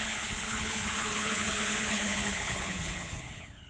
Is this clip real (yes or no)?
no